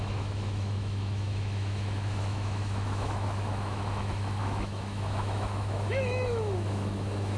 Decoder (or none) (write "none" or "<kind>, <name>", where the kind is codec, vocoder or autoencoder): autoencoder, DAC-VAE